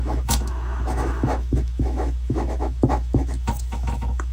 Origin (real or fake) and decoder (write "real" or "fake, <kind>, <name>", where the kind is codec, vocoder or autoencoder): fake, autoencoder, DAC-VAE